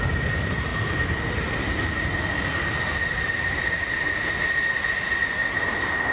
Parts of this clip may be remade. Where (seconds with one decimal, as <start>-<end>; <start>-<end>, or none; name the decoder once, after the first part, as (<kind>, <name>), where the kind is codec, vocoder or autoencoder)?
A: none